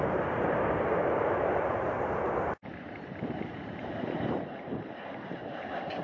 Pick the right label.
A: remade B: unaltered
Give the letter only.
A